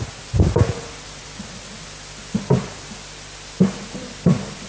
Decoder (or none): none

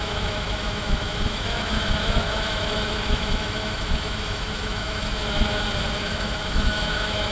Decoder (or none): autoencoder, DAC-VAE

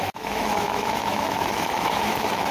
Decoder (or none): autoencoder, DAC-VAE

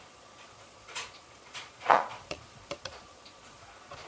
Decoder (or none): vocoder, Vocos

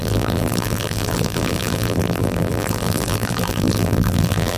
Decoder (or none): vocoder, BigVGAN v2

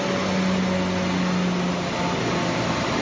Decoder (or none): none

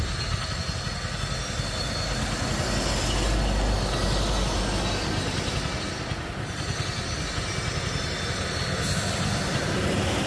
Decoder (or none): none